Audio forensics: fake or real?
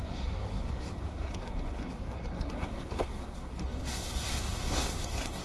fake